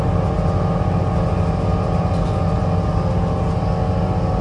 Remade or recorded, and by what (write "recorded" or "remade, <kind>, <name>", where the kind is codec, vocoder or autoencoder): recorded